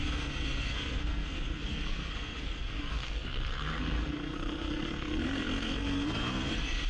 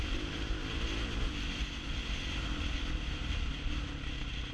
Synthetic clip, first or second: first